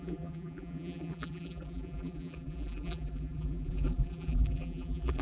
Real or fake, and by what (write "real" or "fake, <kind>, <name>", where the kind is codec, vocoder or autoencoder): fake, vocoder, BigVGAN v2